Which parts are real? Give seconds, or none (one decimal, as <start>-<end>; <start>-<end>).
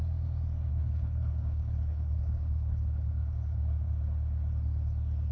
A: 0.0-0.7; 3.9-5.3